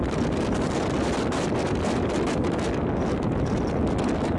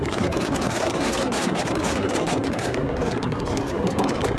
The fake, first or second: second